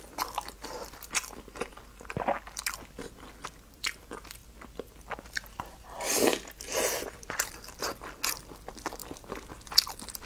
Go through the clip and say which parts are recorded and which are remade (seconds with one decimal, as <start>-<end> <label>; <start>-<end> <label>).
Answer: 0.0-10.3 recorded